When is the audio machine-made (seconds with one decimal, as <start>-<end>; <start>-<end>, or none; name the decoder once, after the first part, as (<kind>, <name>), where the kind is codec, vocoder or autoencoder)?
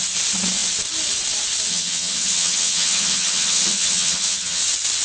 1.7-4.6 (vocoder, HiFi-GAN)